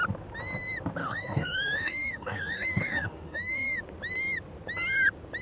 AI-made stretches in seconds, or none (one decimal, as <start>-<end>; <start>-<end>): 1.0-3.8